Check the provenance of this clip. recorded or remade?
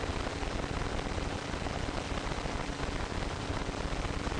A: recorded